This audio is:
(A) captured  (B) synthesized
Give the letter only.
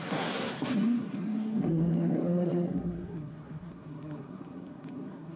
B